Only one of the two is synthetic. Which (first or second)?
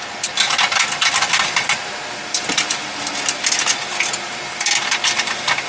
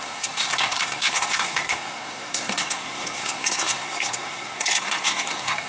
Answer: second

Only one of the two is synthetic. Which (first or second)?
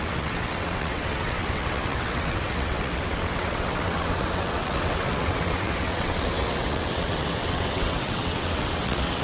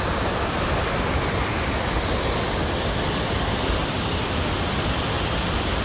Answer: first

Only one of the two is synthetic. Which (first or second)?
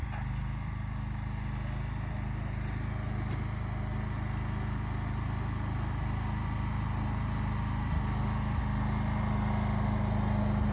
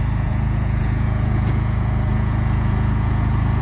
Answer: second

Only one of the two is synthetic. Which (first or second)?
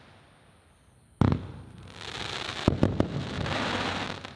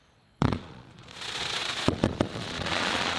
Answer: second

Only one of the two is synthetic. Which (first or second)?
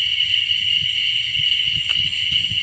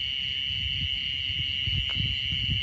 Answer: first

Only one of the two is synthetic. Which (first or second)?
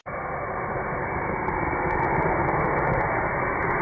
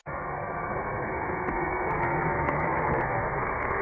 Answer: second